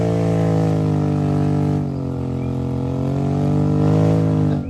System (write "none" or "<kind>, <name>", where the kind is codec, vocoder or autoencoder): none